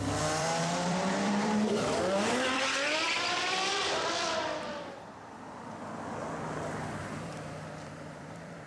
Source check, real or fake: fake